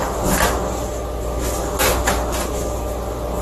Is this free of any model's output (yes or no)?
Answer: yes